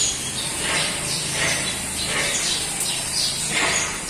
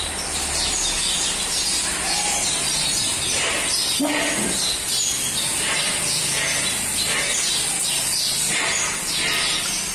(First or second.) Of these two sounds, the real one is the second